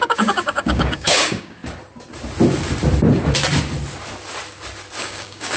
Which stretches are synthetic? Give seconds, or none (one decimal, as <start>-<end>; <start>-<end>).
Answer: 0.0-1.6; 5.0-5.6